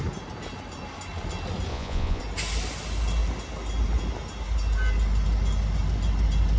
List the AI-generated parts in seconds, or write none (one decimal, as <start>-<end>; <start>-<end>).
1.7-2.2